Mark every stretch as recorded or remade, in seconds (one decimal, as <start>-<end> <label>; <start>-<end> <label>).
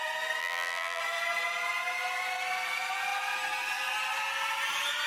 0.0-0.4 recorded; 0.4-1.0 remade; 1.0-5.1 recorded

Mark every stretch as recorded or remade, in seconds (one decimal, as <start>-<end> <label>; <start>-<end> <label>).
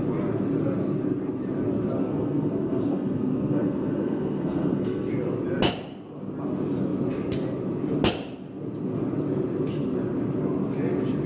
0.0-2.0 recorded; 2.0-5.1 remade; 5.1-11.3 recorded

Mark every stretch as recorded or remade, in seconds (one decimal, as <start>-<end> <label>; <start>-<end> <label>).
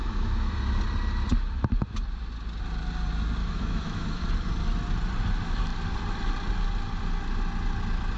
0.0-0.5 remade; 0.5-3.4 recorded; 3.4-4.2 remade; 4.2-8.2 recorded